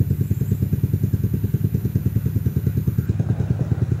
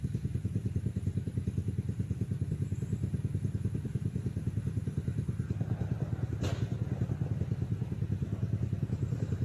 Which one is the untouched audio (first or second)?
first